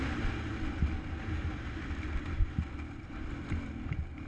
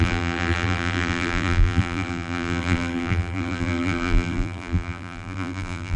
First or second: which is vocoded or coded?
second